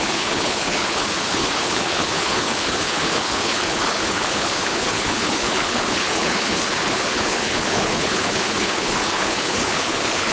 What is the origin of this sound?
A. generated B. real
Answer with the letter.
A